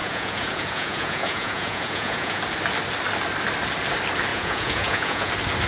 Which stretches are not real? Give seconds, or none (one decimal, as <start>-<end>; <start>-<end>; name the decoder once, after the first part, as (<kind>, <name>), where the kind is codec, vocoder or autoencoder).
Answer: 0.0-2.4 (vocoder, Vocos); 4.3-5.3